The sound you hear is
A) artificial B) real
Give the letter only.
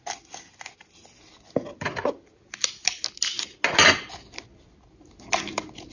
B